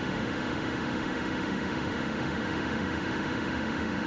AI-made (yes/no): yes